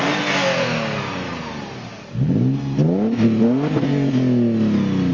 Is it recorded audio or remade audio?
recorded